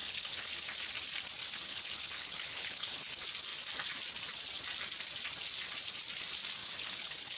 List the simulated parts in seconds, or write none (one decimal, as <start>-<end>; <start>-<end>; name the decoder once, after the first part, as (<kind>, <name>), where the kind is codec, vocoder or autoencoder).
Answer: 0.0-0.5 (codec, HILCodec); 1.4-3.1; 6.6-7.4